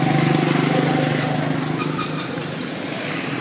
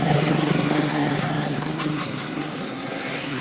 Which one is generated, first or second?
second